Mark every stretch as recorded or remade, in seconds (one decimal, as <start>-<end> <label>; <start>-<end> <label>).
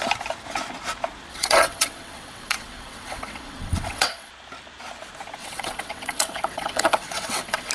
0.0-1.3 recorded; 1.3-4.3 remade; 4.3-5.4 recorded; 5.4-7.7 remade